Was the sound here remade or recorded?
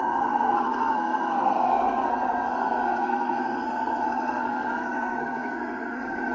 remade